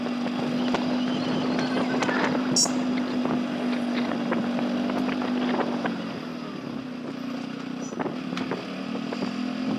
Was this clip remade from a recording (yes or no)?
no